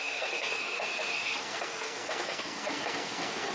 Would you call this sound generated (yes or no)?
yes